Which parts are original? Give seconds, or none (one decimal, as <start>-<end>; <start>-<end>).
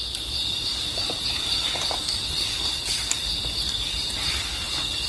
0.0-5.1